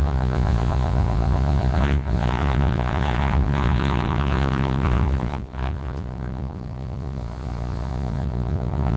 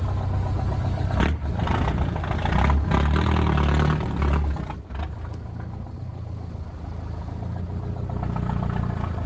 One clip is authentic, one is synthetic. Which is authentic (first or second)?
second